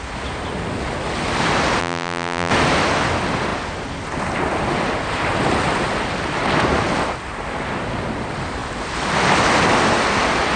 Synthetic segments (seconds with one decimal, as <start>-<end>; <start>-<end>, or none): 1.8-2.5